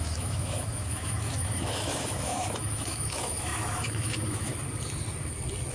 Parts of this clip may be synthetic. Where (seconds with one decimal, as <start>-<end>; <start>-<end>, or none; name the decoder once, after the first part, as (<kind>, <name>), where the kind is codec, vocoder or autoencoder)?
0.0-4.5 (autoencoder, DAC-VAE)